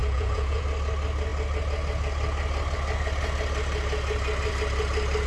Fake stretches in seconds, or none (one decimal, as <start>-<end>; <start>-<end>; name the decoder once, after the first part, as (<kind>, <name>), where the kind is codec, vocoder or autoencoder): 0.0-0.6 (vocoder, Vocos)